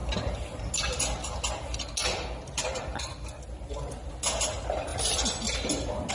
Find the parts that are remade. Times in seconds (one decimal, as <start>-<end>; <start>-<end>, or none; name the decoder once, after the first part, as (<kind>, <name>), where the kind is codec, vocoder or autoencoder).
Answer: 2.0-4.1 (vocoder, BigVGAN v2); 4.9-6.1